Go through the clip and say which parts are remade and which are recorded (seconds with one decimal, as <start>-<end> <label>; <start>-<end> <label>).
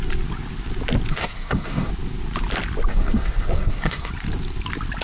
0.0-1.1 recorded; 1.1-1.9 remade; 1.9-2.9 recorded; 2.9-4.1 remade; 4.1-5.0 recorded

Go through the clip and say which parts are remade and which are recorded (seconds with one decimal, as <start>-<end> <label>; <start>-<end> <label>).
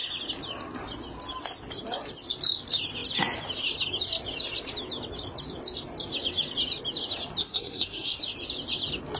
0.0-7.4 recorded; 7.4-8.2 remade; 8.2-9.2 recorded